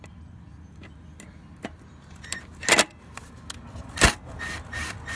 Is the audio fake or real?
real